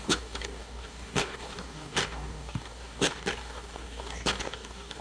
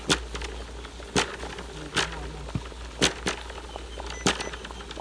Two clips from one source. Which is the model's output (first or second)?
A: first